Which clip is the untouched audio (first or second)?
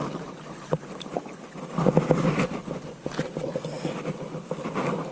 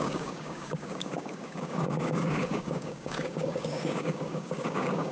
first